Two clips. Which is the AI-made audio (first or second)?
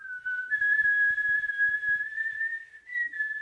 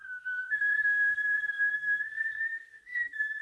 second